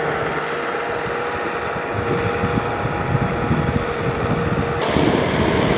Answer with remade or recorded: recorded